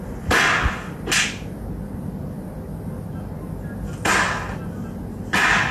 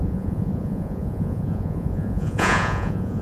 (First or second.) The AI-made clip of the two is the second